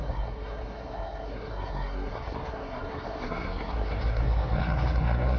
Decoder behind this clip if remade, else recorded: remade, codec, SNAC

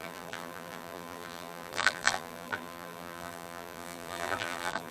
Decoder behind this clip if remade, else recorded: remade, vocoder, BigVGAN v2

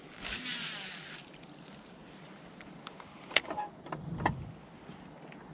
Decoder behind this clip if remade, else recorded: recorded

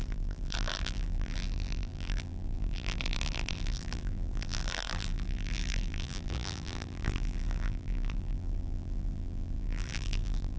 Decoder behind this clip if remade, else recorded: remade, vocoder, BigVGAN v2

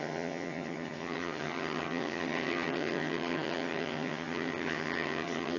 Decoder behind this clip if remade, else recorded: remade, vocoder, HiFi-GAN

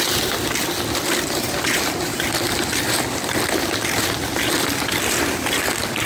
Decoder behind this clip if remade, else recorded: recorded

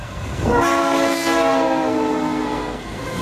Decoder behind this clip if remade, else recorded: remade, codec, SNAC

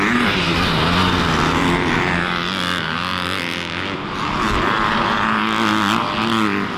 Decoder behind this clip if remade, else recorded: recorded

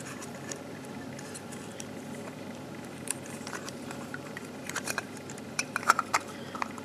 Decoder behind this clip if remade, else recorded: remade, vocoder, BigVGAN v2